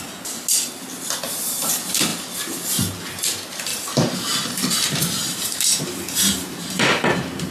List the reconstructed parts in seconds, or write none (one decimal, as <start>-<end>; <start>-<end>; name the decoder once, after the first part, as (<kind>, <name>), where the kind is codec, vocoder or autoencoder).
3.7-7.5 (vocoder, BigVGAN v2)

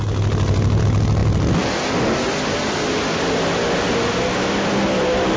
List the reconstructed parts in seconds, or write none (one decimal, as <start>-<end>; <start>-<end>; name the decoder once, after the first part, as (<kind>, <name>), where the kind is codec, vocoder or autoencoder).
none

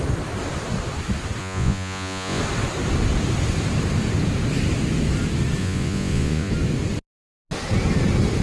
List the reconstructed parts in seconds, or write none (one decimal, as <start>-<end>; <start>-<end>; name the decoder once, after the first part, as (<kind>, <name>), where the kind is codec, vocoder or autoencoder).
1.4-2.4 (vocoder, Vocos); 5.6-6.5

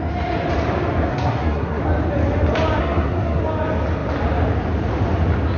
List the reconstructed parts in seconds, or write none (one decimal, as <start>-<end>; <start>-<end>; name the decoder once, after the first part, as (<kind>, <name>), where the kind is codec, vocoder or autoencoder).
1.1-1.8 (codec, SNAC); 2.8-3.4

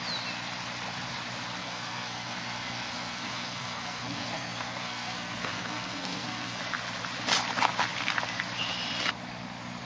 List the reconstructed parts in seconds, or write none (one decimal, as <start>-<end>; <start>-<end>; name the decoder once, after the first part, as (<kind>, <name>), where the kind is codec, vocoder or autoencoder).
1.6-6.6 (codec, SNAC)

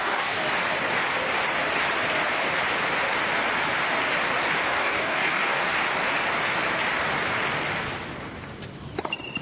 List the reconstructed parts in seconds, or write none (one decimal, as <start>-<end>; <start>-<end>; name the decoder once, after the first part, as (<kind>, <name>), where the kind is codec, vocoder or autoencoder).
0.0-0.4 (codec, DAC); 4.7-5.6

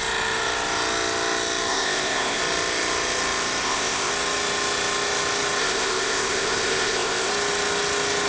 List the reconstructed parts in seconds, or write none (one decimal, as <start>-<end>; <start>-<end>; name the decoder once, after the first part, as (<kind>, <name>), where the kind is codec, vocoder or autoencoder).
1.7-2.4 (codec, ZipCodec); 3.6-4.1; 5.6-7.3